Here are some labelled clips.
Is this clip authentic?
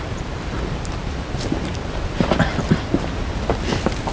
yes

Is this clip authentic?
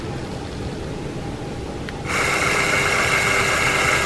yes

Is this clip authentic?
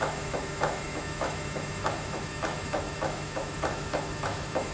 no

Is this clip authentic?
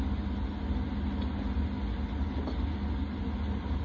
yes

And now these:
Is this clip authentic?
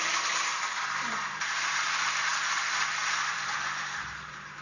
no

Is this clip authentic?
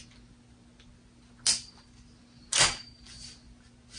yes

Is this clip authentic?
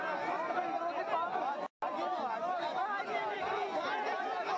yes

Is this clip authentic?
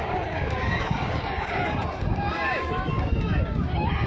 no